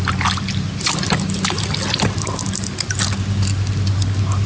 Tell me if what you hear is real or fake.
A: real